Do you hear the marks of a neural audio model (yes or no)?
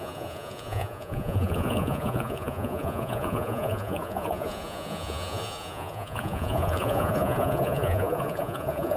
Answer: yes